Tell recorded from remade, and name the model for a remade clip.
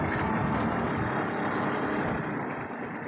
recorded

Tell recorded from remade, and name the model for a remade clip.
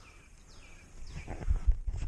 recorded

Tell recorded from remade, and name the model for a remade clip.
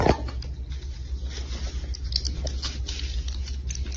recorded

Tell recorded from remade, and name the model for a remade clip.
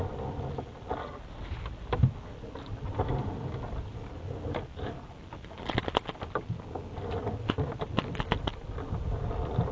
recorded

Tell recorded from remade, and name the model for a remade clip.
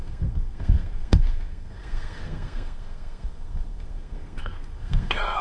remade, codec, SNAC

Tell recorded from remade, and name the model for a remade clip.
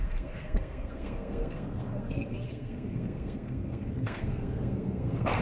remade, codec, SNAC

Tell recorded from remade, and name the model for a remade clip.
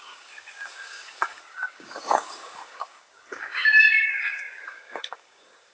remade, codec, DAC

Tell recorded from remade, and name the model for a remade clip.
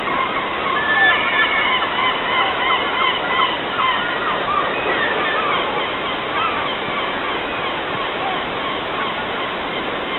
recorded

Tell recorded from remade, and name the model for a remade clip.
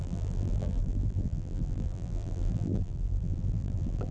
remade, vocoder, BigVGAN v2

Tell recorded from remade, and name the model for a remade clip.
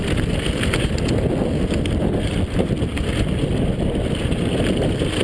recorded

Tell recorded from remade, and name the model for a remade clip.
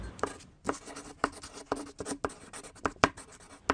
recorded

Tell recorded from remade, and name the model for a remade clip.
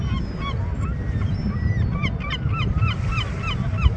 recorded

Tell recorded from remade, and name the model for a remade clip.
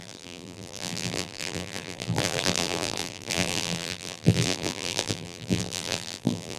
remade, vocoder, BigVGAN v2